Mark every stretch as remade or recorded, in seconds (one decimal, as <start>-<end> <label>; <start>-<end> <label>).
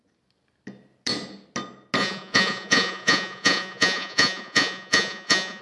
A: 0.0-2.0 recorded; 2.0-5.6 remade